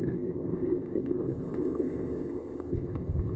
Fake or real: fake